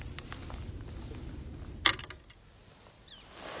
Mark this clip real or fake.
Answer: real